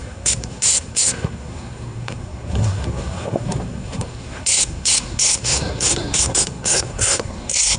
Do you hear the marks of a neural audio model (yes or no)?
yes